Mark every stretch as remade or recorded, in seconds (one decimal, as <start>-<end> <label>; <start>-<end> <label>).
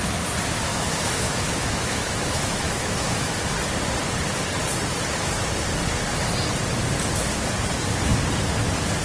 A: 0.0-0.7 recorded; 0.7-3.4 remade; 3.4-9.0 recorded